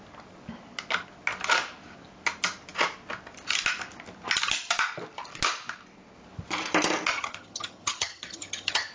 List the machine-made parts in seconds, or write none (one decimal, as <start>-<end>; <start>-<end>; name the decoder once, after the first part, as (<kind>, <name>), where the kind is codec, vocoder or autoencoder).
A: 7.1-8.9 (vocoder, HiFi-GAN)